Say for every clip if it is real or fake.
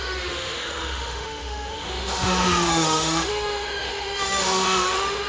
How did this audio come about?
fake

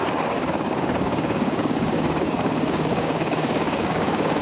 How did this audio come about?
fake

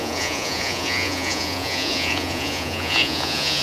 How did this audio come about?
fake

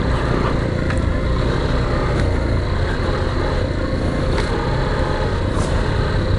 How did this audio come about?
real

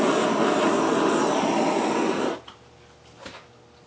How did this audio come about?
real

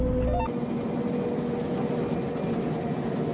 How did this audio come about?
real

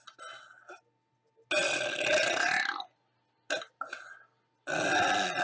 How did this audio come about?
real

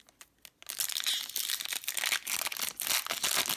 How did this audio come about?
real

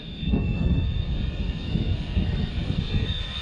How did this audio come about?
fake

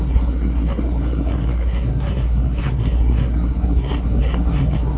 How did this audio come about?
fake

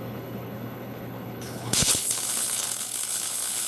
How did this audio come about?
fake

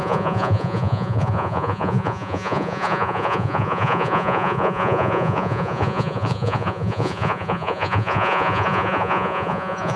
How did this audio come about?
fake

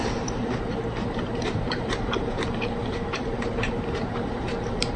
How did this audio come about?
fake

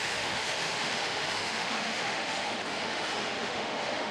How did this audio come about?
fake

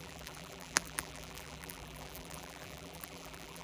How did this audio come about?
fake